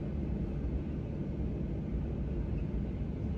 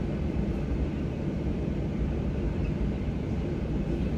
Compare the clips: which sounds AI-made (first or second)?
second